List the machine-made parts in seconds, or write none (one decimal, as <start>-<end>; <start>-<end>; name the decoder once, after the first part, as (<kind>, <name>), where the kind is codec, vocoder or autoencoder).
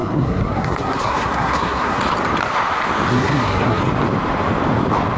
0.0-2.0 (codec, SNAC); 3.1-3.8